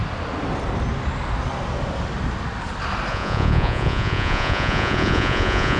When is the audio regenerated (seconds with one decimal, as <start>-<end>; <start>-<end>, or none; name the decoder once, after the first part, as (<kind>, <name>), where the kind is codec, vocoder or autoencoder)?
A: 3.1-5.8 (vocoder, Vocos)